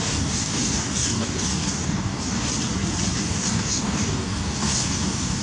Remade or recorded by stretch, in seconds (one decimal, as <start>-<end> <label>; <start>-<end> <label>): 0.0-2.5 remade; 2.5-3.2 recorded; 3.2-5.4 remade